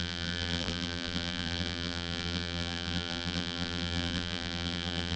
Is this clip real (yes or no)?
no